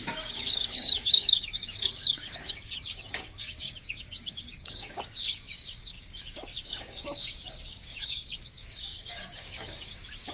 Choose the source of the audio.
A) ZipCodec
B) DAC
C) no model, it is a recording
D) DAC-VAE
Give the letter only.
B